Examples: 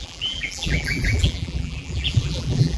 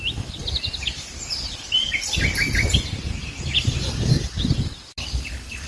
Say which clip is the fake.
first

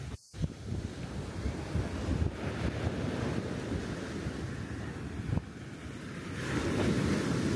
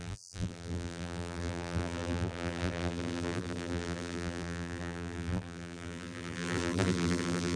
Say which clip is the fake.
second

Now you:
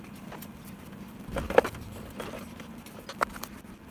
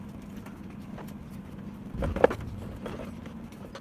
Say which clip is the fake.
first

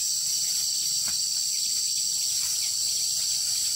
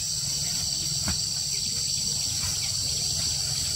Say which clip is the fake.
first